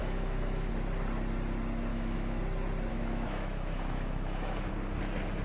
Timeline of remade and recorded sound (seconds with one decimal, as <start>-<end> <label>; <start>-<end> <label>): 0.0-0.7 remade; 0.7-1.9 recorded; 1.9-2.4 remade; 2.4-2.9 recorded; 2.9-4.7 remade; 4.7-5.4 recorded